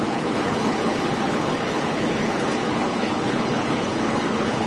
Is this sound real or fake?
fake